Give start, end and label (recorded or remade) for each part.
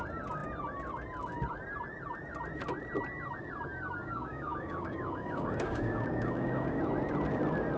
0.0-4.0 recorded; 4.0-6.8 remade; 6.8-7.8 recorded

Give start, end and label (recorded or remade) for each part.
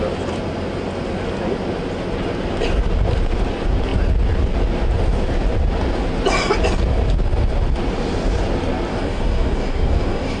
0.0-8.9 recorded; 8.9-10.4 remade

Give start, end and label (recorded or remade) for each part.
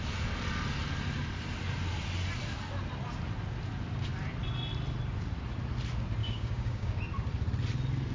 0.0-6.2 recorded; 6.2-7.0 remade; 7.0-8.1 recorded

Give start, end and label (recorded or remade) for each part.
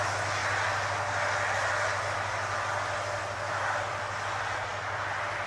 0.0-5.5 recorded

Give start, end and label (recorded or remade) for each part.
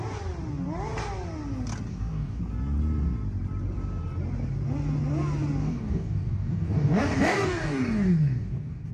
0.0-1.9 recorded; 1.9-2.4 remade; 2.4-5.6 recorded; 5.6-8.9 remade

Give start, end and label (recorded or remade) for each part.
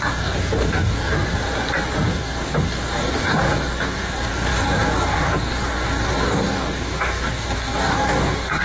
0.0-1.1 remade; 1.1-2.1 recorded; 2.1-8.6 remade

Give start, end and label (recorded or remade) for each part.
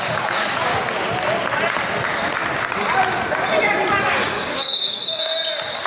0.0-0.7 remade; 0.7-4.2 recorded; 4.2-5.3 remade; 5.3-5.9 recorded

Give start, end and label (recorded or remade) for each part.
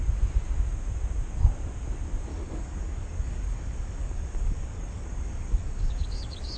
0.0-2.3 recorded; 2.3-6.6 remade